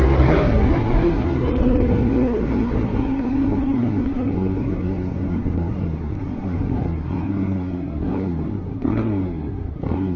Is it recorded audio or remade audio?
remade